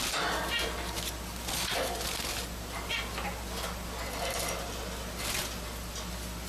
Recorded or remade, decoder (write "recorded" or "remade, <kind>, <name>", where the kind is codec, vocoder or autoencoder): recorded